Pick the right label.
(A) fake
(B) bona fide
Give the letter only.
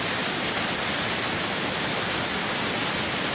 B